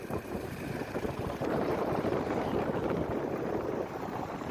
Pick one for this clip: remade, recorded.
remade